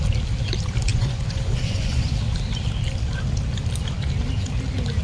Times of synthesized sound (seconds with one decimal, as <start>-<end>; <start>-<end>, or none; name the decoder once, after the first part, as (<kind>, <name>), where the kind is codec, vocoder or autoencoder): 0.9-2.1 (vocoder, Vocos)